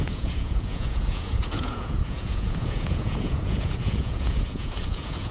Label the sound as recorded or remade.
remade